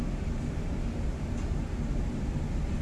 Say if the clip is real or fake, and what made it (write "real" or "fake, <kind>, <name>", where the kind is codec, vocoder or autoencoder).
real